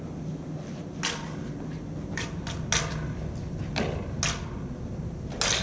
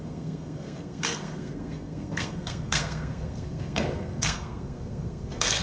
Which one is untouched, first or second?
first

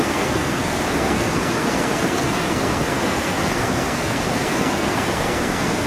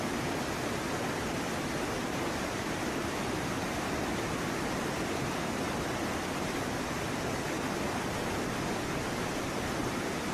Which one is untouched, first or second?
second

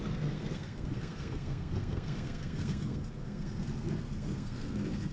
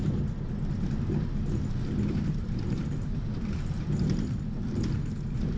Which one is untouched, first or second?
second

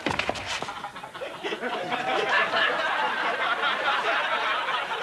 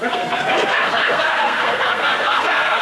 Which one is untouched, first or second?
first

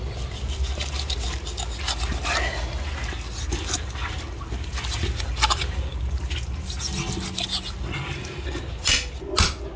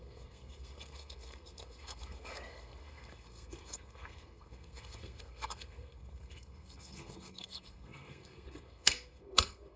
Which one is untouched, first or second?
first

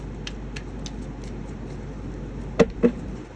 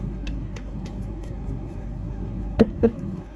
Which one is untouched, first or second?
first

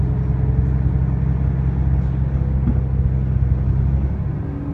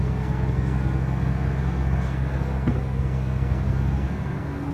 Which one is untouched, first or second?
first